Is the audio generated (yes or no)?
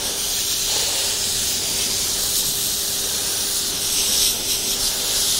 no